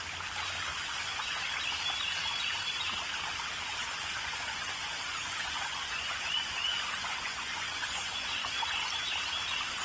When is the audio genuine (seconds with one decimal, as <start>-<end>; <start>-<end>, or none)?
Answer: 0.0-0.7; 1.4-3.7; 9.0-9.8